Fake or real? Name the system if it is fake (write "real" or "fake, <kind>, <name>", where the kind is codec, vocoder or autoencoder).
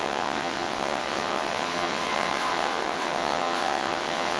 fake, vocoder, WaveNeXt